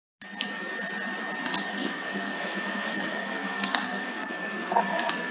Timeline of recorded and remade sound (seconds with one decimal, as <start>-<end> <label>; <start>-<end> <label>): 0.0-1.7 recorded; 1.7-5.3 remade